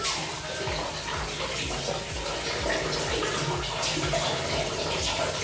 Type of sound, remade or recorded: recorded